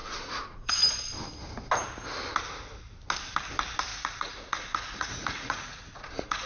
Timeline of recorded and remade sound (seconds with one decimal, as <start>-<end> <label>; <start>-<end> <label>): 0.0-0.7 remade; 0.7-3.9 recorded; 3.9-6.5 remade